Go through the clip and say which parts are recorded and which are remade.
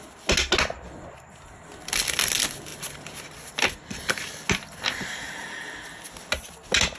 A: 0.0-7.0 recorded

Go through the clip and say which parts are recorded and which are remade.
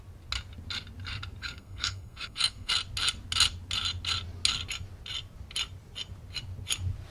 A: 0.0-1.4 recorded; 1.4-2.7 remade; 2.7-7.1 recorded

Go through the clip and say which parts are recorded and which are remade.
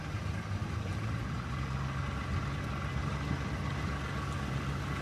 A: 0.0-5.0 recorded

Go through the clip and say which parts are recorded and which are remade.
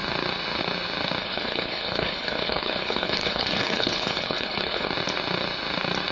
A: 0.0-1.2 recorded; 1.2-4.9 remade; 4.9-6.1 recorded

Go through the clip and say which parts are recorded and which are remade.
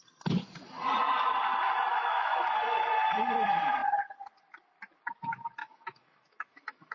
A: 0.0-1.9 recorded; 1.9-2.4 remade; 2.4-5.6 recorded; 5.6-6.9 remade